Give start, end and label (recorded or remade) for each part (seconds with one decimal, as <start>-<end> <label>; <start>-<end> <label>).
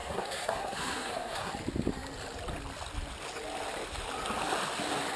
0.0-1.5 remade; 1.5-5.2 recorded